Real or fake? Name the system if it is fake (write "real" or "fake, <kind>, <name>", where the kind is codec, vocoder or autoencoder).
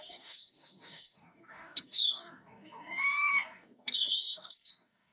fake, codec, DAC